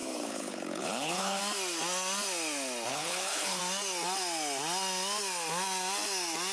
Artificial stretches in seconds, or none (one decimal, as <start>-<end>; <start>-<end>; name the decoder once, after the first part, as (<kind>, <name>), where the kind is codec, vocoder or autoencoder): 0.0-1.4 (codec, HILCodec); 2.9-3.6

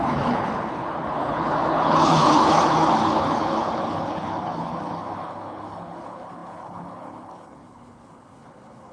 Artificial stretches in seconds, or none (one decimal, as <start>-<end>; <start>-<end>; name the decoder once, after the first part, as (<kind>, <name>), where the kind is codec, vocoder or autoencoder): 0.0-8.9 (codec, HILCodec)

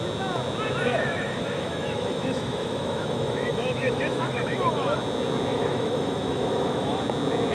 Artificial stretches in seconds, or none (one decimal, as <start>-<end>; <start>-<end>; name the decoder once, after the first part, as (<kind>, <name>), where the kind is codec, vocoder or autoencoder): 0.9-5.0 (autoencoder, DAC-VAE); 5.5-7.0

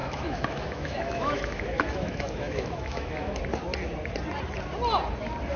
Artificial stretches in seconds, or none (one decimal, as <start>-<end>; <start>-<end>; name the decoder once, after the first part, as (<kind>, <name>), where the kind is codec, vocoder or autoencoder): 0.0-3.4 (autoencoder, DAC-VAE)

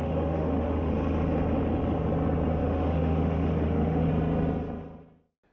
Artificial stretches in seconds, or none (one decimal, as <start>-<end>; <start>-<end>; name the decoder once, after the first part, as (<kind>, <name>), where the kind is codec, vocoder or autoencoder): 0.0-0.9 (autoencoder, DAC-VAE); 2.6-4.1

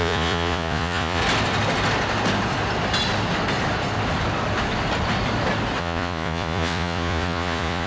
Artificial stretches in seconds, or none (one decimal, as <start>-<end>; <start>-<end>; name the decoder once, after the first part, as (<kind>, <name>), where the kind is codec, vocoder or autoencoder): 0.0-1.2 (vocoder, Vocos); 5.8-7.9